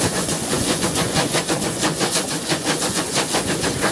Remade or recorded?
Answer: remade